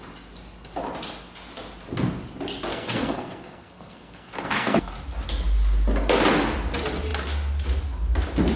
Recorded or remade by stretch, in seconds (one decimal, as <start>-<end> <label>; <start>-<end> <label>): 0.0-2.7 recorded; 2.7-4.9 remade; 4.9-8.6 recorded